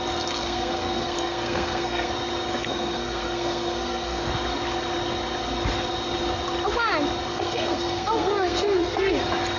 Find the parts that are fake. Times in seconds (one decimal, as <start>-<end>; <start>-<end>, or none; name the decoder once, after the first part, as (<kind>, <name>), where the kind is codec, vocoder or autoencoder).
0.4-2.1 (codec, SNAC); 2.5-4.3; 7.3-9.1